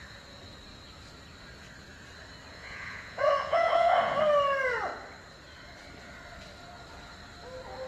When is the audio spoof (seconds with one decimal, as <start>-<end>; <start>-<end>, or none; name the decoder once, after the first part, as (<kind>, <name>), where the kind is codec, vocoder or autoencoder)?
2.5-4.2 (vocoder, Vocos)